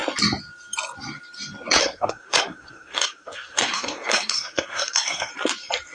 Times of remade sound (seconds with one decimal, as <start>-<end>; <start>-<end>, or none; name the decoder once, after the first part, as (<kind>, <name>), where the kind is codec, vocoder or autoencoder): 1.8-5.3 (codec, SNAC)